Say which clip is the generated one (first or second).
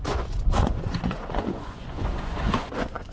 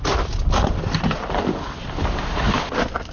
first